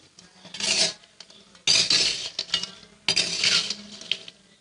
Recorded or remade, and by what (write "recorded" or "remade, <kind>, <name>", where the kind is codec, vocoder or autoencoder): recorded